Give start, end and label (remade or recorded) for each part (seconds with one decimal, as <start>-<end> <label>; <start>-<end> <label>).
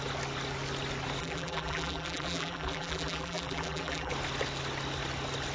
0.0-1.2 recorded; 1.2-4.1 remade; 4.1-5.5 recorded